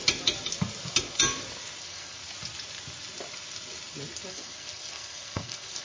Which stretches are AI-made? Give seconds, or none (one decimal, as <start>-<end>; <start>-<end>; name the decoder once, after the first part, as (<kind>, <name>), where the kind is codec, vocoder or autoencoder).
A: 1.8-2.2 (codec, SNAC); 4.3-5.8